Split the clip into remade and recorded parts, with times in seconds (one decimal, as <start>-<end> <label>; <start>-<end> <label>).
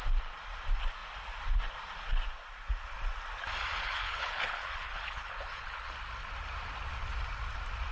0.0-3.8 recorded; 3.8-5.9 remade; 5.9-7.9 recorded